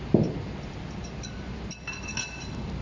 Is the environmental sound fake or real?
real